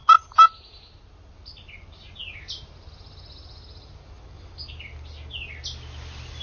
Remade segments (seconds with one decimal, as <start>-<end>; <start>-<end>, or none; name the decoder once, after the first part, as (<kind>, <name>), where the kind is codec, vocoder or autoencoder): none